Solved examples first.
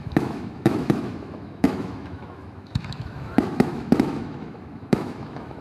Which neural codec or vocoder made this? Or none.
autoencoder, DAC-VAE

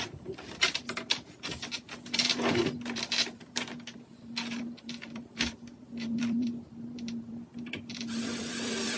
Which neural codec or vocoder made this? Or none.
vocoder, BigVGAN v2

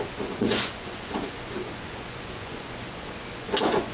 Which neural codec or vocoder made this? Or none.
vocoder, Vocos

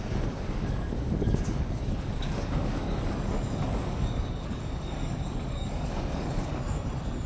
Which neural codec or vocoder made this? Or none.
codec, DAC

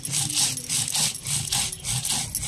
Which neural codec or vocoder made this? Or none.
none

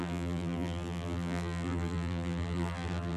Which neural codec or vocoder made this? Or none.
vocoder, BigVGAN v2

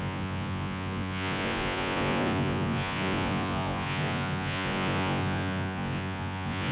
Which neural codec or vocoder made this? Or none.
vocoder, Vocos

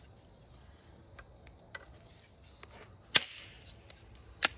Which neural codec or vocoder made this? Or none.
none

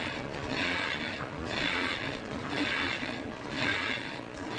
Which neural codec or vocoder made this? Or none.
vocoder, Vocos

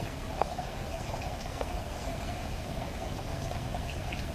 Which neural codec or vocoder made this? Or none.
codec, SNAC